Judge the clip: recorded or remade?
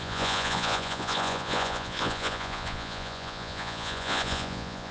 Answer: remade